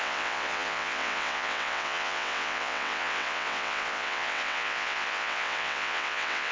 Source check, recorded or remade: remade